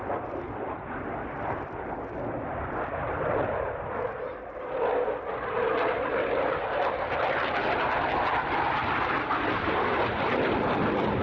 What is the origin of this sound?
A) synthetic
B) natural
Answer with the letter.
B